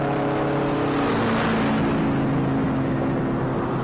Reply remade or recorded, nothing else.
recorded